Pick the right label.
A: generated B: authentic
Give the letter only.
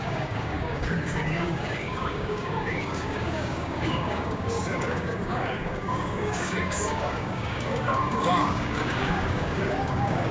A